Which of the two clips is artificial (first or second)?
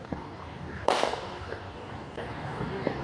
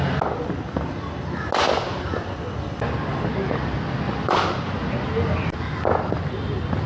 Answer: first